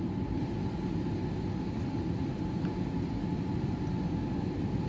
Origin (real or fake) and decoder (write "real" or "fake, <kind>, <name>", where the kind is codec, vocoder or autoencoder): real